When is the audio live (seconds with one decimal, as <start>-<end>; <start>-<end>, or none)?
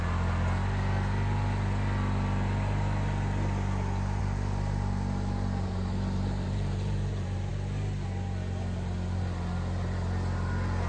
0.0-4.2; 7.5-10.9